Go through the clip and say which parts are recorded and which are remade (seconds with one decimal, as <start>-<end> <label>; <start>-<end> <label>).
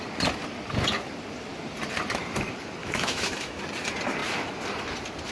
0.0-2.8 recorded; 2.8-3.6 remade; 3.6-5.3 recorded